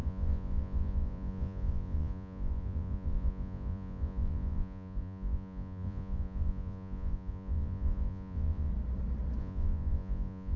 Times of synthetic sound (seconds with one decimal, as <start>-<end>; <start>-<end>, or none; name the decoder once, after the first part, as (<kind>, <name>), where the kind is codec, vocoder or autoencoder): 0.0-8.7 (vocoder, Vocos); 9.4-10.6